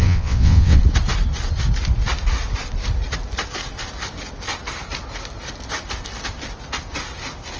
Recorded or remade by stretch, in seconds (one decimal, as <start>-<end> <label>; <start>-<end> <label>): 0.0-0.8 remade; 0.8-7.6 recorded